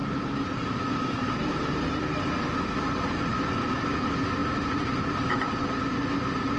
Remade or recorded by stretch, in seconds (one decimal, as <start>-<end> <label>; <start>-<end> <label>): 0.0-1.9 remade; 1.9-4.4 recorded; 4.4-5.6 remade; 5.6-6.6 recorded